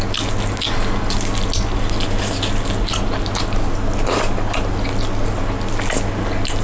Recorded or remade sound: recorded